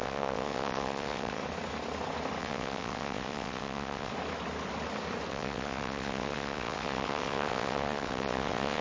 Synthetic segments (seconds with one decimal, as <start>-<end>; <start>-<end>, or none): 0.0-1.4; 2.4-4.1; 5.3-8.8